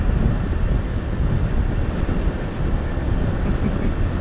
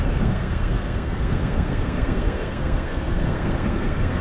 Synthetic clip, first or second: second